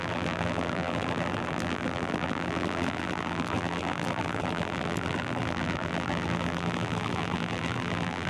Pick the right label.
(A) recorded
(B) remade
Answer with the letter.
B